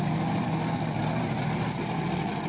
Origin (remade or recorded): recorded